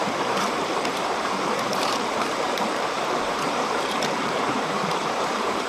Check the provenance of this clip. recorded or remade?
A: remade